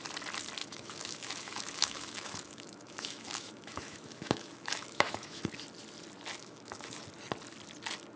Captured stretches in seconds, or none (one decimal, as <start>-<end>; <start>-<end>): 0.0-0.6; 5.5-6.4; 7.0-8.2